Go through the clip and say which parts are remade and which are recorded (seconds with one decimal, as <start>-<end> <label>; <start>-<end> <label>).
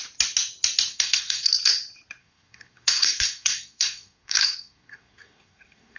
0.0-0.9 recorded; 0.9-1.5 remade; 1.5-2.2 recorded; 2.2-6.0 remade